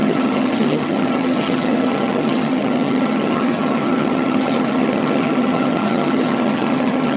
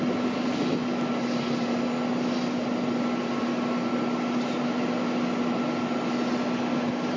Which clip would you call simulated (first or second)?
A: first